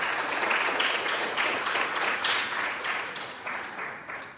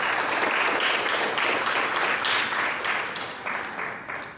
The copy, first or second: first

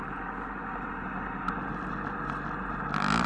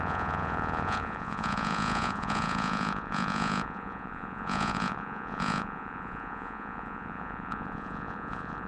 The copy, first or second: second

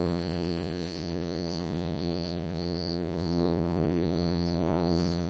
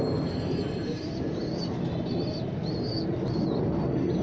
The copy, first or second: first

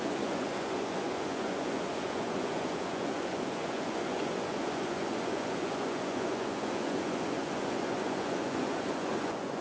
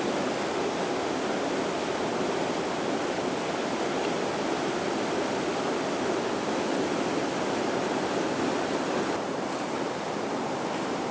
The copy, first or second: first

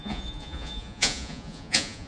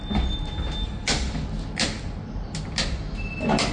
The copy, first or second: first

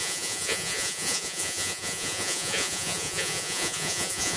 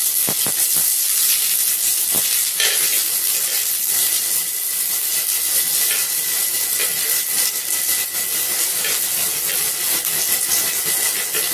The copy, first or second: first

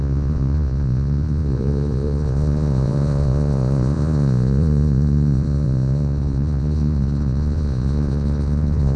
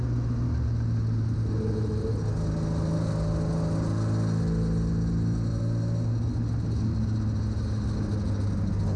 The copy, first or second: first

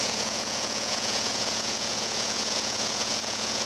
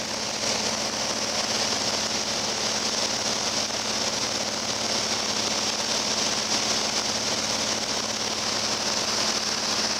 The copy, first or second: first